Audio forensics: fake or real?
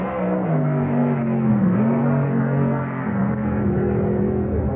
fake